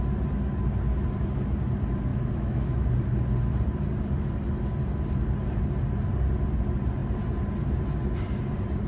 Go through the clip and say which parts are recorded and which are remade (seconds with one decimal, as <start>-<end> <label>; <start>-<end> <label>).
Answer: 0.0-2.1 recorded; 2.1-2.9 remade; 2.9-8.9 recorded